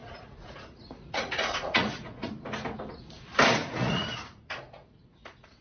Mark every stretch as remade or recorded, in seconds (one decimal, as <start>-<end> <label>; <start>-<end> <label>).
0.0-2.3 remade; 2.3-3.6 recorded; 3.6-5.6 remade